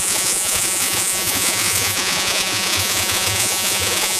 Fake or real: fake